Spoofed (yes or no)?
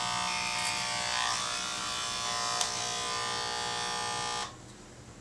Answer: no